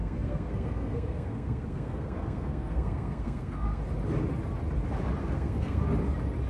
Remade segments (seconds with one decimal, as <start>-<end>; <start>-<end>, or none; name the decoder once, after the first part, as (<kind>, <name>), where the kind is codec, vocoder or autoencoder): 0.0-3.8 (codec, SNAC); 5.2-5.8